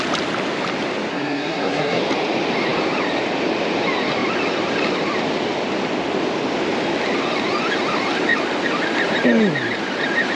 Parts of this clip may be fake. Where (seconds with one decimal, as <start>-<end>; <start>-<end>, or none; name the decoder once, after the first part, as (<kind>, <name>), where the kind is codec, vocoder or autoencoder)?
1.1-2.0 (codec, SNAC)